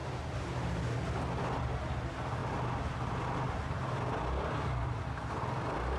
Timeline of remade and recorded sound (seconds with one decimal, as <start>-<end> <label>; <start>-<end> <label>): 0.0-6.0 recorded